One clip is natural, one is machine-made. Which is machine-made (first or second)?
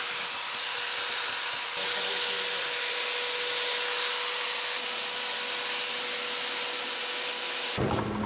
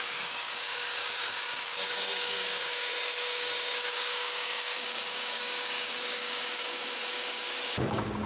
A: second